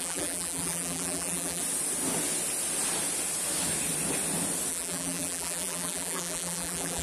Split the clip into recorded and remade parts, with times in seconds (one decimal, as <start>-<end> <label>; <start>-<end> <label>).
0.0-1.6 remade; 1.6-4.7 recorded; 4.7-7.0 remade